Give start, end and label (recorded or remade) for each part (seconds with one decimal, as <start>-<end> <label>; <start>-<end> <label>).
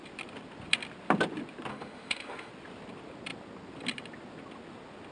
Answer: 0.0-1.7 recorded; 1.7-2.5 remade; 2.5-5.1 recorded